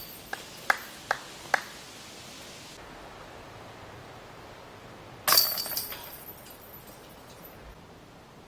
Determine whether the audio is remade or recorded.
recorded